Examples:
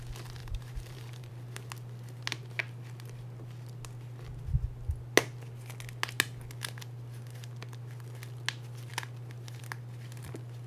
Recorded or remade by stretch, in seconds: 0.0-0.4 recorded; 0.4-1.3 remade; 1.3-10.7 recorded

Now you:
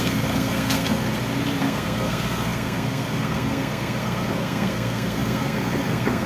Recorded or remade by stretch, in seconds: 0.0-1.1 remade; 1.1-1.6 recorded; 1.6-6.3 remade